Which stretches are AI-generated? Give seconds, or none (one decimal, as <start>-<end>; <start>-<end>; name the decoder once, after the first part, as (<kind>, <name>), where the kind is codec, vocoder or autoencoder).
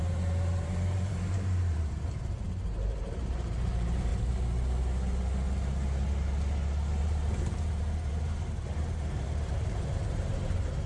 0.0-4.1 (vocoder, BigVGAN v2); 7.0-10.9